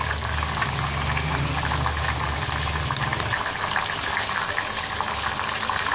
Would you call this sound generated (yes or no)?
no